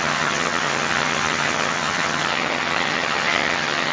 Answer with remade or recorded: remade